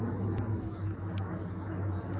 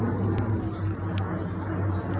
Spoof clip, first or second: first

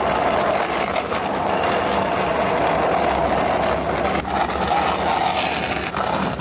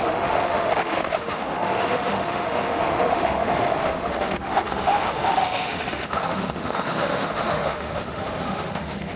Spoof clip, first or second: second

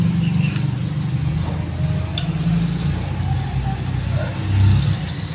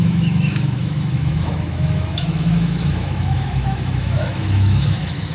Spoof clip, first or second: second